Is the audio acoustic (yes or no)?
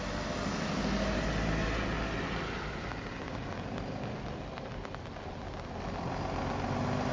yes